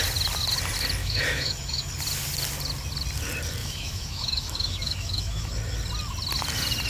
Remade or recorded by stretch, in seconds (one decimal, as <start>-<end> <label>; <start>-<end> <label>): 0.0-1.0 recorded; 1.0-1.9 remade; 1.9-3.6 recorded; 3.6-5.5 remade; 5.5-6.9 recorded